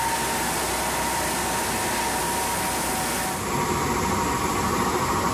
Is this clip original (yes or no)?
yes